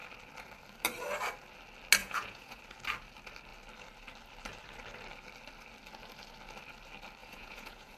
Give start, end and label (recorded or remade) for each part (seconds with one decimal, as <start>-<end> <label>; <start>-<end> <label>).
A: 0.0-2.0 recorded; 2.0-2.6 remade; 2.6-7.2 recorded; 7.2-8.0 remade